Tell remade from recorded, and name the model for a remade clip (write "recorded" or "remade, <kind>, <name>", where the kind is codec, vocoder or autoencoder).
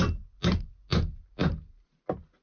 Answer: recorded